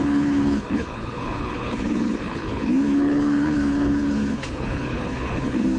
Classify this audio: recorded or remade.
remade